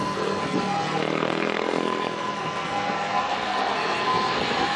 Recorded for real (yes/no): no